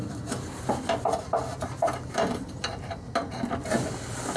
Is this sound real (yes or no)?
no